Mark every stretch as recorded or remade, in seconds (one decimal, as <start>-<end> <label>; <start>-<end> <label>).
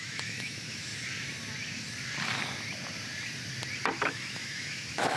0.0-0.9 remade; 0.9-4.0 recorded; 4.0-5.2 remade